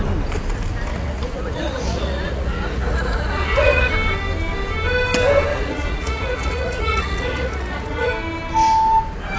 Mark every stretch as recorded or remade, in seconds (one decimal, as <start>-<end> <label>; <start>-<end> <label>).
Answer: 0.0-0.9 recorded; 0.9-3.9 remade; 3.9-5.5 recorded; 5.5-8.1 remade; 8.1-9.4 recorded